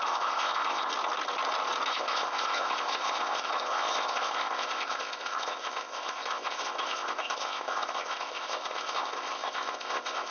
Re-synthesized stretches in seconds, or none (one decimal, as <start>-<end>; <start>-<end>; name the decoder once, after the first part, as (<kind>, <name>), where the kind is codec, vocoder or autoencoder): 0.0-0.9 (codec, ZipCodec); 1.9-10.3